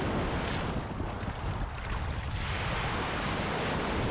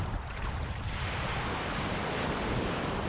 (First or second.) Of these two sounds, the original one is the first